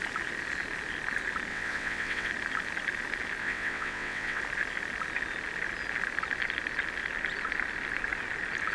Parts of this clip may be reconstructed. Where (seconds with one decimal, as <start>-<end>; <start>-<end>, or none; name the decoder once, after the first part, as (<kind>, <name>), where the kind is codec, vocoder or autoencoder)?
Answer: 1.5-2.3 (vocoder, WaveNeXt); 3.4-4.4